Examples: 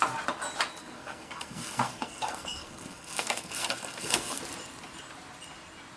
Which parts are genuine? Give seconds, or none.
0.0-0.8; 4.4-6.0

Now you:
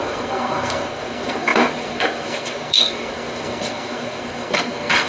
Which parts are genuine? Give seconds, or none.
none

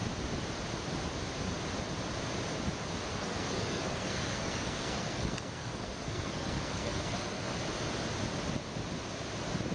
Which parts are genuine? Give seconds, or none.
0.0-3.1; 7.5-9.7

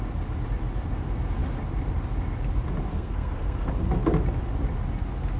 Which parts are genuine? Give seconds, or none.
0.0-2.9; 3.7-5.4